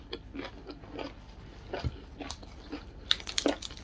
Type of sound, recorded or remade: recorded